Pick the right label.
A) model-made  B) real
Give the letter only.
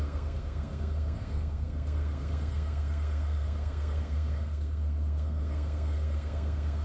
A